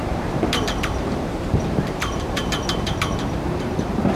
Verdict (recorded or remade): remade